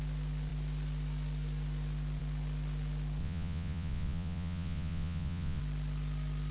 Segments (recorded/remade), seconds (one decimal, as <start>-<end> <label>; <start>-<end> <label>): 0.0-3.2 recorded; 3.2-5.6 remade; 5.6-6.5 recorded